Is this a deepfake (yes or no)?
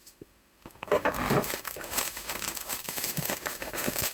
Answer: yes